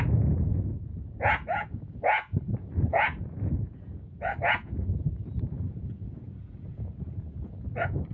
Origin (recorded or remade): remade